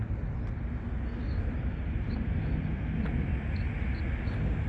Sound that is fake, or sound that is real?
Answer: real